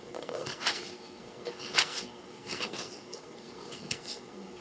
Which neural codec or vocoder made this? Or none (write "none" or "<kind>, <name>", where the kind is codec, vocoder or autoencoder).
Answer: codec, SNAC